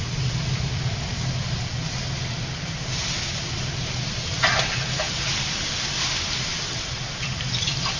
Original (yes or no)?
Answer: yes